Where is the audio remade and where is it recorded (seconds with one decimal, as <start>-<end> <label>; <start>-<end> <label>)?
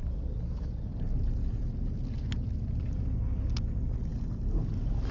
0.0-5.1 recorded